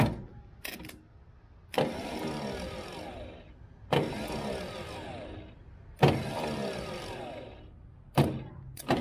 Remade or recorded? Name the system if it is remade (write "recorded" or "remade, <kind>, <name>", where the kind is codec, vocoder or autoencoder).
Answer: recorded